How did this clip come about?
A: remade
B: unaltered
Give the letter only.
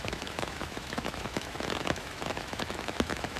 A